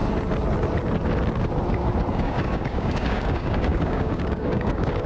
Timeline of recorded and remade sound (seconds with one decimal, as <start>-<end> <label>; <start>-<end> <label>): 0.0-2.1 recorded; 2.1-5.1 remade